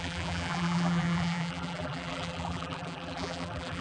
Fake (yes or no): yes